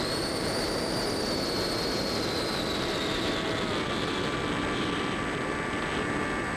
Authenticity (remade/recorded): recorded